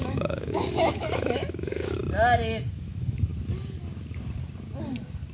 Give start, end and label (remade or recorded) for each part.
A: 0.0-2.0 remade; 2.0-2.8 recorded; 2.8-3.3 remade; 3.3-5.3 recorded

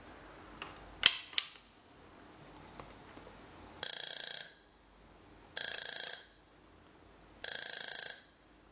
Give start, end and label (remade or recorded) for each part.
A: 0.0-8.7 recorded

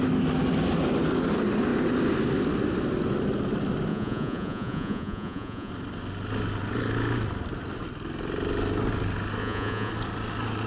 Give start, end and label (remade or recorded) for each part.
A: 0.0-3.9 recorded; 3.9-5.7 remade; 5.7-9.4 recorded; 9.4-9.9 remade; 9.9-10.7 recorded

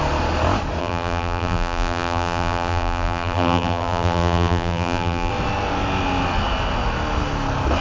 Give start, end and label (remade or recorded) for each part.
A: 0.0-0.8 recorded; 0.8-5.3 remade; 5.3-7.8 recorded

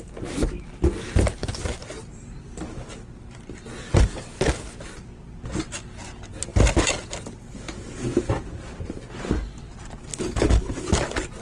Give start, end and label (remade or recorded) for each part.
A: 0.0-10.1 recorded; 10.1-10.8 remade; 10.8-11.4 recorded